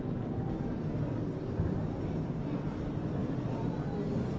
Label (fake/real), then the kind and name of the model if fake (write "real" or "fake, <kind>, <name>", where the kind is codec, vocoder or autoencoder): real